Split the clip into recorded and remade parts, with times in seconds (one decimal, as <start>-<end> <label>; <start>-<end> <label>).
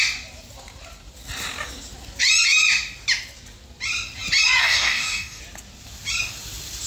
0.0-4.6 recorded; 4.6-5.4 remade; 5.4-6.9 recorded